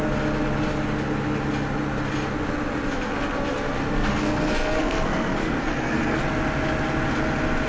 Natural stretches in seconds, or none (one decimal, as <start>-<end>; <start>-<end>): 0.0-4.1; 6.2-7.7